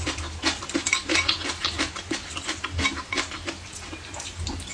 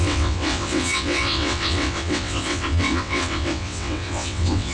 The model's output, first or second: second